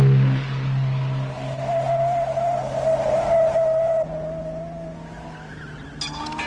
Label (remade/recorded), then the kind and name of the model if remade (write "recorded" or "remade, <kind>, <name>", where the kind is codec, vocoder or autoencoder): recorded